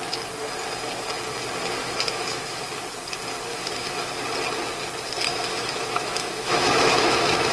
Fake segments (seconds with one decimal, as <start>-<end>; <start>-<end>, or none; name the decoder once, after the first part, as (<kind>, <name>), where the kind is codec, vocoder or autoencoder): 1.8-2.6 (autoencoder, DAC-VAE); 3.5-4.1; 5.3-7.5